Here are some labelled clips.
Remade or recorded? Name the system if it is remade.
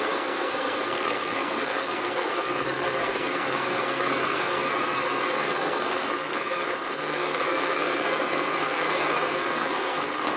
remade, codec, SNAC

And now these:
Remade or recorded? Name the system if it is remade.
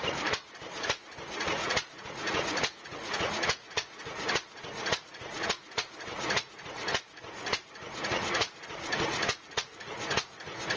remade, vocoder, Vocos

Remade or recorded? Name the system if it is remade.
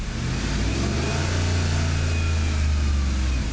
recorded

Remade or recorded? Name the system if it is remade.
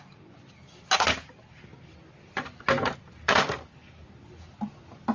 recorded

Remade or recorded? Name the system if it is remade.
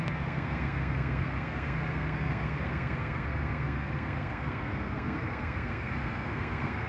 remade, codec, SNAC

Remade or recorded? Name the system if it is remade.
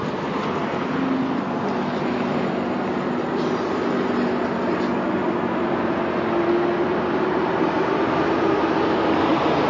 recorded